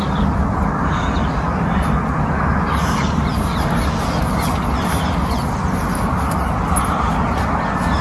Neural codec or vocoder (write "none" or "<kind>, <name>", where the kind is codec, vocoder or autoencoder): none